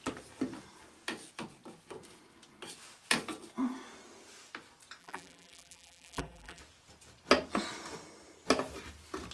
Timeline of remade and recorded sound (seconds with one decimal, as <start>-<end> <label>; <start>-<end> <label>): 0.0-5.0 recorded; 5.0-6.6 remade; 6.6-9.3 recorded